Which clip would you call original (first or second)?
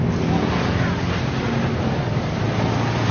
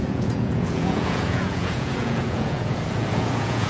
first